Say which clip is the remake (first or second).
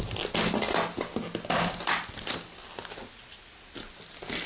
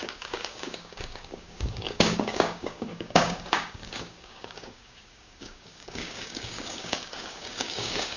second